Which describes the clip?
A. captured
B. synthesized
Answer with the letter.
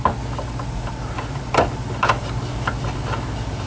A